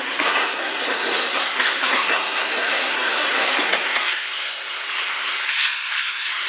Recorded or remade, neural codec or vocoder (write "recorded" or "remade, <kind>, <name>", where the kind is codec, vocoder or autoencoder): remade, codec, SNAC